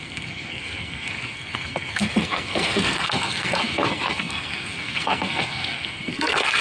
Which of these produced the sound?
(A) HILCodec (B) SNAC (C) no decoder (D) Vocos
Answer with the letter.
B